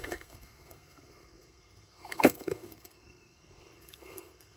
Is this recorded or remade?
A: remade